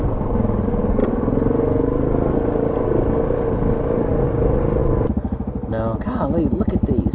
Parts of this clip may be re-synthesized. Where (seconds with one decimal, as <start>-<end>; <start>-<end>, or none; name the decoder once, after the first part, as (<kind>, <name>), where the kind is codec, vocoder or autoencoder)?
none